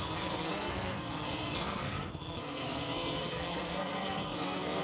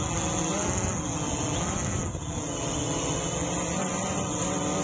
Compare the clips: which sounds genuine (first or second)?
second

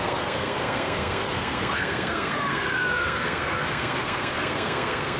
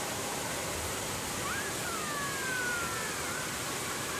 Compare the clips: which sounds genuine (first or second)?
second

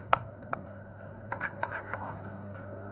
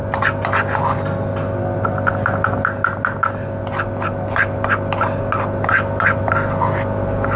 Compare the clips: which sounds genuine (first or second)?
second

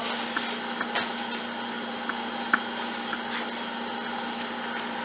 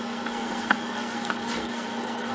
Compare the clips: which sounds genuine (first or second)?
first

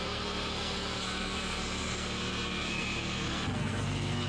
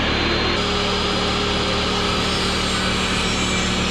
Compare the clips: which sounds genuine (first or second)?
second